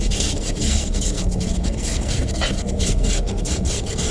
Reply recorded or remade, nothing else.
remade